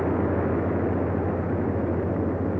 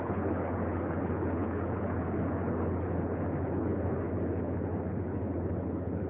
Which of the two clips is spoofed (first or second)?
second